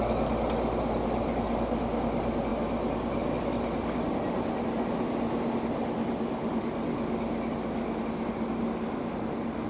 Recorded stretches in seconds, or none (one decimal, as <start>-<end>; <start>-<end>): 0.0-9.7